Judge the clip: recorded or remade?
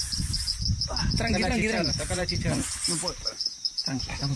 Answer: remade